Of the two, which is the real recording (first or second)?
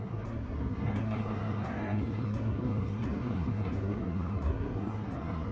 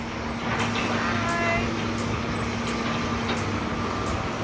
second